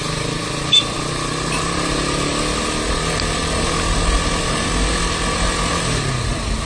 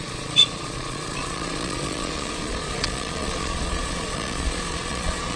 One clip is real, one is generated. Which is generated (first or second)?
second